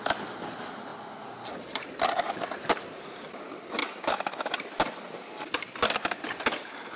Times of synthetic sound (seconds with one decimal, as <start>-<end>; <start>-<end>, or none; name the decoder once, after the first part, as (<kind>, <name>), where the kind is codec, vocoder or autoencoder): 3.8-4.5 (autoencoder, DAC-VAE)